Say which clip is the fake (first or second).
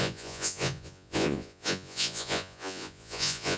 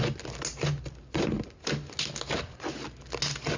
first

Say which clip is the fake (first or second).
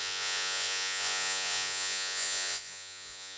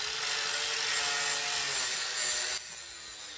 first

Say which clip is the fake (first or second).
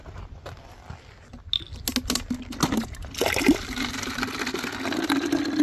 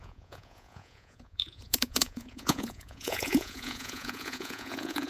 second